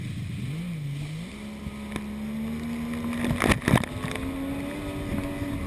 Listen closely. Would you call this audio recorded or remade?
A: recorded